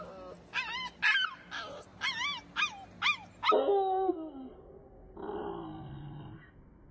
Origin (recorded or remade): recorded